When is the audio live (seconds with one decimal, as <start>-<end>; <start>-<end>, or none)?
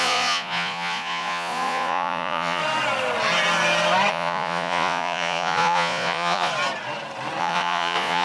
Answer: 2.6-4.1; 6.5-7.4